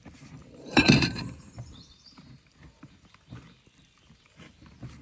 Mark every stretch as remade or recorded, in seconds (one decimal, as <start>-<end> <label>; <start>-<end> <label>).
0.0-0.4 recorded; 0.4-2.9 remade; 2.9-5.0 recorded